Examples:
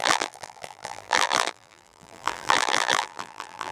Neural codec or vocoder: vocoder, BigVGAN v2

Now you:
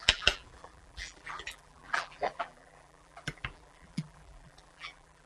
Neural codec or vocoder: vocoder, BigVGAN v2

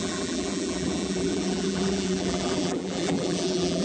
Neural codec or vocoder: vocoder, BigVGAN v2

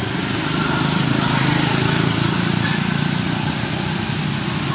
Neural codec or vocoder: vocoder, BigVGAN v2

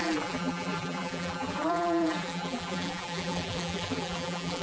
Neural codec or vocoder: vocoder, BigVGAN v2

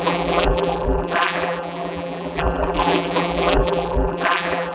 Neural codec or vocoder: vocoder, BigVGAN v2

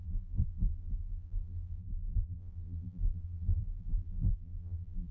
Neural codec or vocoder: vocoder, BigVGAN v2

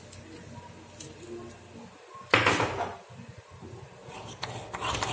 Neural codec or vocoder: none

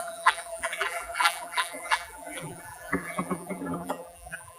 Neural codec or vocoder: vocoder, BigVGAN v2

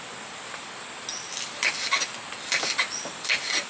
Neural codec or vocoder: none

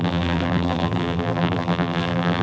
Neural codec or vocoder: vocoder, BigVGAN v2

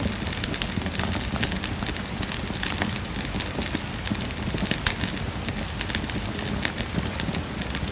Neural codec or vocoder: none